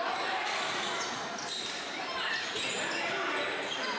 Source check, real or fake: real